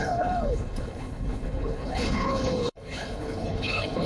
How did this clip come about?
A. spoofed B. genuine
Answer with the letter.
A